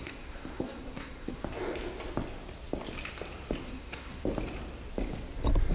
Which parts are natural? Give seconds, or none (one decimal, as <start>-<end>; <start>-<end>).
1.4-3.6; 4.2-5.7

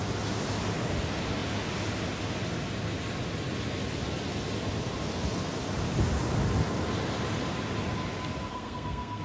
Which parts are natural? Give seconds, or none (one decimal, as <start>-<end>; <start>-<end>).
0.0-8.5

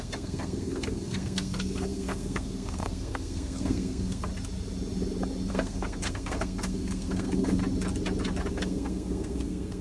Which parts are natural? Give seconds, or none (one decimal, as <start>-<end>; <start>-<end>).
4.3-5.5; 7.6-8.5

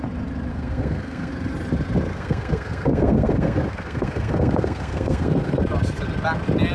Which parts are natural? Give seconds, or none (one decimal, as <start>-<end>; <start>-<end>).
0.0-0.5; 1.3-2.1; 5.6-6.7